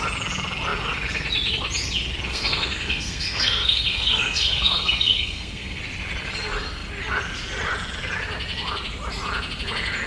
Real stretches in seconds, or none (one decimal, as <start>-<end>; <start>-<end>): 0.0-2.3; 5.8-10.1